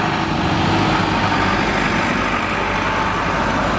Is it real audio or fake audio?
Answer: real